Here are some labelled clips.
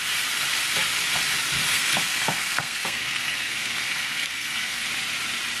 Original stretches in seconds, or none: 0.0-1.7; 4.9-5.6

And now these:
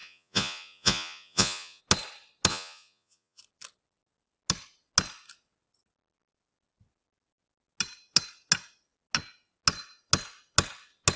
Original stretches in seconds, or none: 1.8-2.5; 3.4-11.2

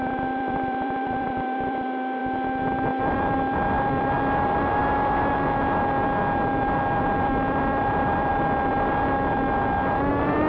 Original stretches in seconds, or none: 2.2-3.0; 4.8-7.0; 8.3-10.1

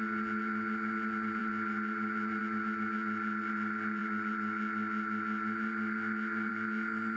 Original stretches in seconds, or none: 0.0-7.2

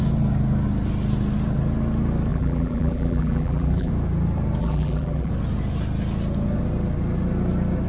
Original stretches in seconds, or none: 0.0-2.3; 3.9-4.6; 5.3-7.9

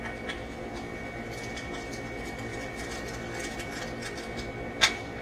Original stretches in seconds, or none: 0.0-5.2

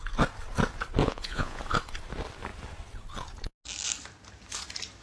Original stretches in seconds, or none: 0.0-1.0; 1.6-5.0

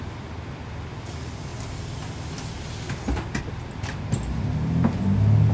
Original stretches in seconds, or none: 0.0-5.5